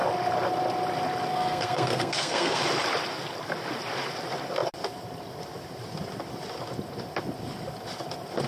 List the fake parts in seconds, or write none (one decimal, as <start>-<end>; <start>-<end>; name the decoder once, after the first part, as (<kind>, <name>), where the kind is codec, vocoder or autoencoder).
1.3-2.6 (codec, SNAC)

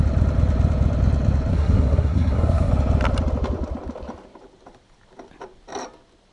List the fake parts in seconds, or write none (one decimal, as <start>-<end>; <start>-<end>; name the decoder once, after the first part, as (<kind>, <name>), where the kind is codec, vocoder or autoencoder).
1.5-2.7 (codec, SNAC)

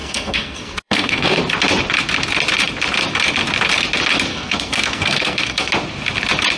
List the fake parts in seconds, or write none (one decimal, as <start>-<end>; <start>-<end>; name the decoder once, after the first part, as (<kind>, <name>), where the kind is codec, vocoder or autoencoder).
0.0-1.4 (codec, SNAC); 4.3-5.7

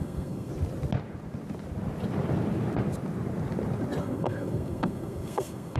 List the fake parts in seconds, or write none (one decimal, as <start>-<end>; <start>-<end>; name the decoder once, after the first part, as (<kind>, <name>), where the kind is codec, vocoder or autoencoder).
0.0-0.5 (codec, SNAC); 4.0-5.8

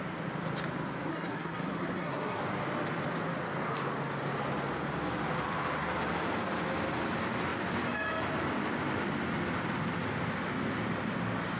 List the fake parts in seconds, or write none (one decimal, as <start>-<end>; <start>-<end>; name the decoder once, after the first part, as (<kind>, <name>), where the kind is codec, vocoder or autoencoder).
1.1-2.4 (codec, SNAC)

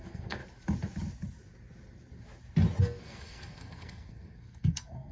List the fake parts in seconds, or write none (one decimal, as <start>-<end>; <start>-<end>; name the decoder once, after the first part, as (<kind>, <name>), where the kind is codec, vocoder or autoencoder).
0.0-0.4 (codec, SNAC); 2.8-5.1

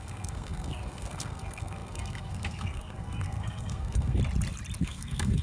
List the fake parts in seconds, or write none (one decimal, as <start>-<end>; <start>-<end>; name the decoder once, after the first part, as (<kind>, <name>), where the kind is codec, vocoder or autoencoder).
0.0-4.2 (codec, SNAC); 4.8-5.4

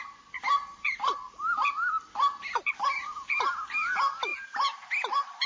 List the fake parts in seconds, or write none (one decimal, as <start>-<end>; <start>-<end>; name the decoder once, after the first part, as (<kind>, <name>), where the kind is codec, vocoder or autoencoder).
none